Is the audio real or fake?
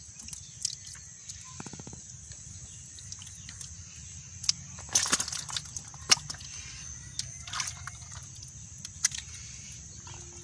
real